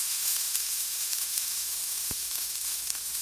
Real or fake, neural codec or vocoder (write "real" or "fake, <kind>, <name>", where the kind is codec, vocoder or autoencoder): fake, autoencoder, DAC-VAE